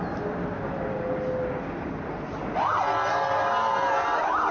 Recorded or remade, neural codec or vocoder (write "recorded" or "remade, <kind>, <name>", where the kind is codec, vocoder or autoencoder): recorded